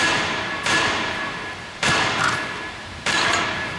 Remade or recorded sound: remade